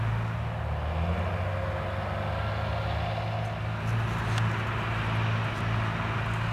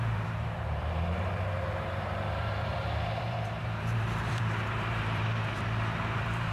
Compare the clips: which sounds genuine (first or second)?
first